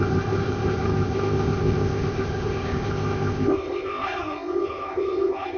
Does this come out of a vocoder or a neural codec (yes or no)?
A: yes